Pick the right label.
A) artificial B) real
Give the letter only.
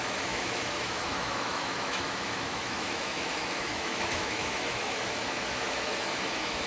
A